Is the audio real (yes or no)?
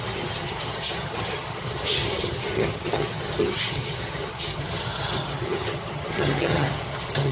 no